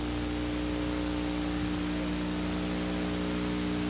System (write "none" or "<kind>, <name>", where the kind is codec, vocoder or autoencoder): none